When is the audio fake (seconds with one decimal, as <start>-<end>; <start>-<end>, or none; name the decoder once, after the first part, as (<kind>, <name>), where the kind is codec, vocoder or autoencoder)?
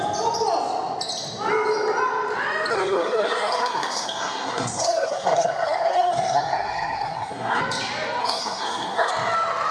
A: 2.7-7.6 (codec, SNAC); 8.2-9.1